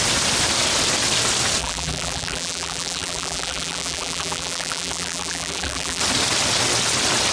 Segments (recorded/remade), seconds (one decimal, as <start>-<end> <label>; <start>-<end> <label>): 0.0-1.6 recorded; 1.6-6.0 remade; 6.0-7.3 recorded